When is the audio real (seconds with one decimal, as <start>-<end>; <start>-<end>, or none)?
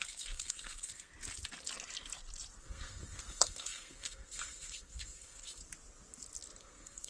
1.1-2.6; 5.6-6.6